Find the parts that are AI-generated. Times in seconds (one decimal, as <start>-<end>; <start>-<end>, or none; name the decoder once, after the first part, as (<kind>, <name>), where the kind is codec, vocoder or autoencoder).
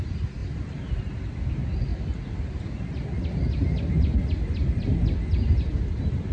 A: none